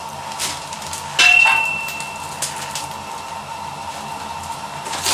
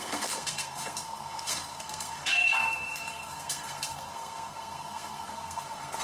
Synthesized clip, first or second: second